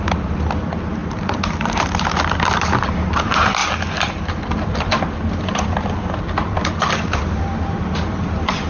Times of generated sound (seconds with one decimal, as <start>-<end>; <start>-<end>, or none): 0.0-3.6; 4.5-8.7